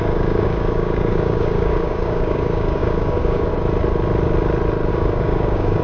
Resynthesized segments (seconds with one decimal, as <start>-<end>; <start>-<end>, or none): 0.0-3.5; 4.9-5.8